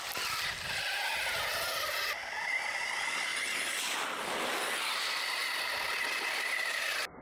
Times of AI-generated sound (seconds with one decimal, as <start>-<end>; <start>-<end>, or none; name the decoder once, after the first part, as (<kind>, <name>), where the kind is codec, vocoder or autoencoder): none